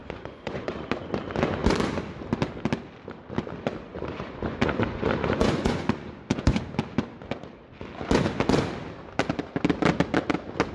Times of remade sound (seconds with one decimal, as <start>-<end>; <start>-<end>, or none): 0.0-0.9; 3.9-6.6